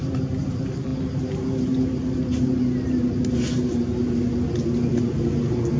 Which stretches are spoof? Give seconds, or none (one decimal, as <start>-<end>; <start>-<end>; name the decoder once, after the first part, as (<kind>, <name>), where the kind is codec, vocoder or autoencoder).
none